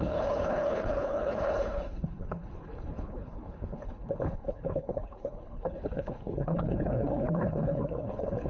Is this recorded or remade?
remade